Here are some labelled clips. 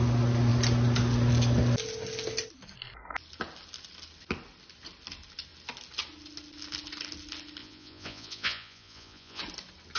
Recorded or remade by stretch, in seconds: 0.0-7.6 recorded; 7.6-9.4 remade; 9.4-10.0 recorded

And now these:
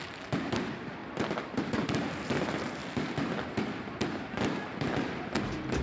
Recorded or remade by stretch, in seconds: 0.0-5.8 recorded

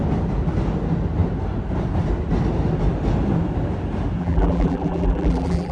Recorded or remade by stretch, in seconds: 0.0-4.2 recorded; 4.2-5.7 remade

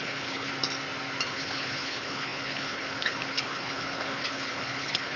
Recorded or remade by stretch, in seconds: 0.0-0.5 remade; 0.5-1.3 recorded; 1.3-5.2 remade

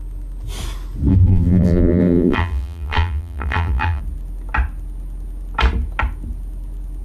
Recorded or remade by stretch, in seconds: 0.0-1.1 recorded; 1.1-4.0 remade; 4.0-7.0 recorded

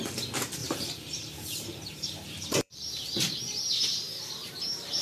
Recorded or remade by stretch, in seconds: 0.0-0.6 recorded; 0.6-3.6 remade; 3.6-5.0 recorded

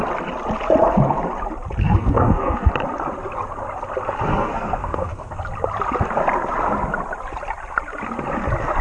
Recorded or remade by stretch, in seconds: 0.0-1.8 recorded; 1.8-2.7 remade; 2.7-4.3 recorded; 4.3-5.4 remade; 5.4-8.8 recorded